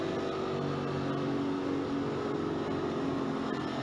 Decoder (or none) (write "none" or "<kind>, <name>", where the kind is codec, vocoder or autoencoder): none